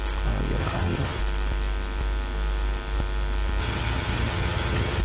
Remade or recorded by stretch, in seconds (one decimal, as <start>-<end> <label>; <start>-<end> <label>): 0.0-0.6 recorded; 0.6-1.2 remade; 1.2-3.6 recorded; 3.6-5.0 remade

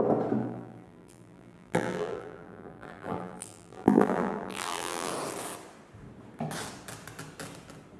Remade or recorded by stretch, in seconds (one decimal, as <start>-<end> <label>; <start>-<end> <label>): 0.0-0.4 recorded; 0.4-5.1 remade; 5.1-8.0 recorded

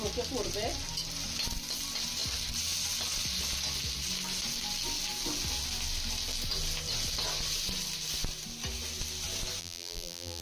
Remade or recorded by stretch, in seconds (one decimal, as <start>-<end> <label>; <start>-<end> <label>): 0.0-9.6 recorded; 9.6-10.4 remade

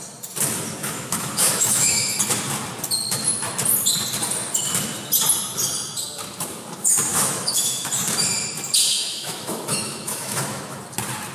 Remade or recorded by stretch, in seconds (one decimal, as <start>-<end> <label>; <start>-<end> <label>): 0.0-0.8 recorded; 0.8-2.2 remade; 2.2-7.1 recorded; 7.1-7.9 remade; 7.9-8.9 recorded; 8.9-10.8 remade; 10.8-11.3 recorded

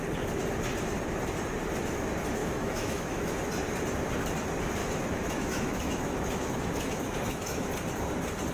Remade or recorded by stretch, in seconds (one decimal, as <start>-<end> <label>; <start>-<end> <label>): 0.0-2.4 recorded; 2.4-3.4 remade; 3.4-4.8 recorded; 4.8-7.7 remade; 7.7-8.5 recorded

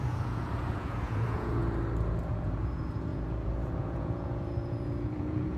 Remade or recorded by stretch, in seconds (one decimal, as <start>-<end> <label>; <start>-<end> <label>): 0.0-1.6 remade; 1.6-2.2 recorded; 2.2-5.6 remade